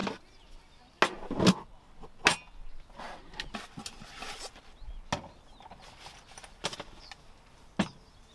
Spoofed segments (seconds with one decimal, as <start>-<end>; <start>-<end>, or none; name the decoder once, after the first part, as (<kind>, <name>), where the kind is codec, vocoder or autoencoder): none